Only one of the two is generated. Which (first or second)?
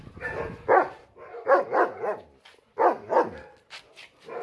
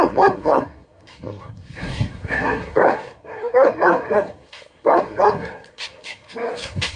second